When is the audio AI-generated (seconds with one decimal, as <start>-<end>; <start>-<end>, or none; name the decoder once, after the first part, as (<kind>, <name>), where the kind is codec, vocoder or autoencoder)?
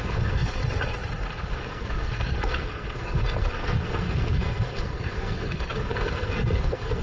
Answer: 0.0-0.6 (codec, SNAC); 1.5-7.0